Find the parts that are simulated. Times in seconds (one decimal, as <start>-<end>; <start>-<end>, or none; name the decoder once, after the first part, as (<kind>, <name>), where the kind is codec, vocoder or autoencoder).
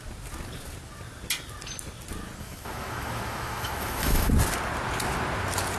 2.4-4.3 (autoencoder, DAC-VAE)